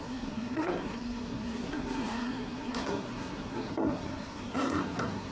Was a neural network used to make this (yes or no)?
yes